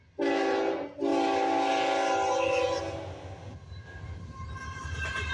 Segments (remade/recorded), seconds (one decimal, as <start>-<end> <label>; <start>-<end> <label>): 0.0-5.3 recorded